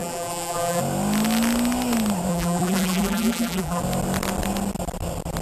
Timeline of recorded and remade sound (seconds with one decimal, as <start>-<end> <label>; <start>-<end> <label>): 0.0-0.8 remade; 0.8-2.3 recorded; 2.3-3.8 remade; 3.8-5.4 recorded